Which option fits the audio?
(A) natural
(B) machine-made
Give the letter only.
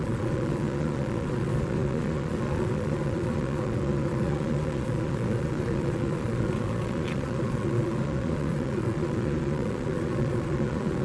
B